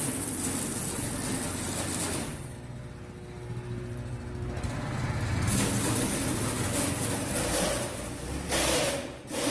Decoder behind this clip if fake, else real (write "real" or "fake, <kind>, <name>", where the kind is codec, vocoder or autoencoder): real